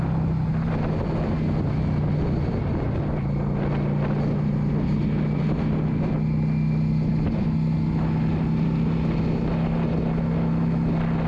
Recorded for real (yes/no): yes